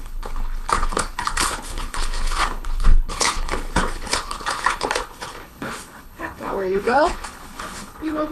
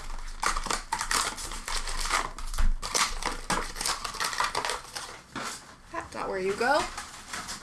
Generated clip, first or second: first